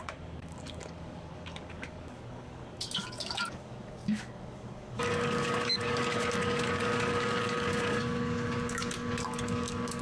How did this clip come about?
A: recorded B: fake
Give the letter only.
B